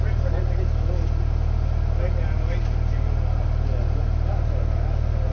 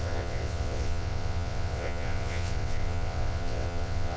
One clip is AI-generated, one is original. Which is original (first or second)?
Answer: first